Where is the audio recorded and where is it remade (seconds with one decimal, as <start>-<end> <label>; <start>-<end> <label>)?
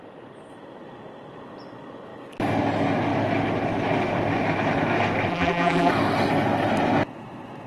0.0-5.3 recorded; 5.3-5.9 remade; 5.9-7.7 recorded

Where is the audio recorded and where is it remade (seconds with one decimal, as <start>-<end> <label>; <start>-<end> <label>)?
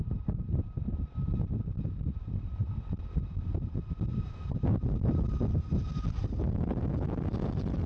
0.0-4.1 recorded; 4.1-6.0 remade; 6.0-7.9 recorded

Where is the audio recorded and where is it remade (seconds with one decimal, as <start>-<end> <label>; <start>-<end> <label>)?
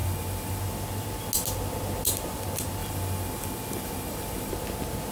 0.0-0.6 remade; 0.6-2.8 recorded; 2.8-4.5 remade; 4.5-5.1 recorded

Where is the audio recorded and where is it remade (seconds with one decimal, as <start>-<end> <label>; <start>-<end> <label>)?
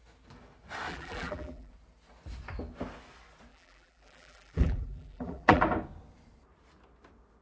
0.0-0.9 recorded; 0.9-1.7 remade; 1.7-3.5 recorded; 3.5-5.6 remade; 5.6-7.4 recorded